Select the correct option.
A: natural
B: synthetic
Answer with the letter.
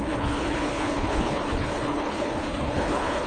B